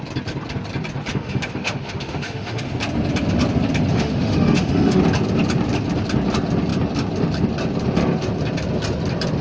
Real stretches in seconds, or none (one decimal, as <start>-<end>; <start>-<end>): 0.0-1.1; 2.7-3.9; 5.0-9.4